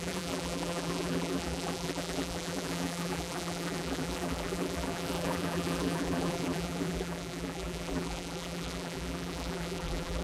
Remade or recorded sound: remade